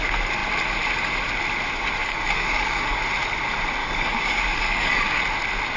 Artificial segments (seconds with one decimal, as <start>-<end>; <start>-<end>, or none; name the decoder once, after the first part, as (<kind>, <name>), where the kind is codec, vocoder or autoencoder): 2.0-3.0 (codec, DAC); 3.8-5.2